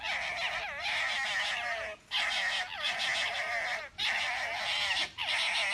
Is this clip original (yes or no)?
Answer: yes